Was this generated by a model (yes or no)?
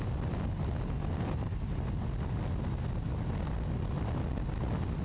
no